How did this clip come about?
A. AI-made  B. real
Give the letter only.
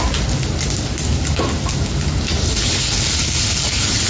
B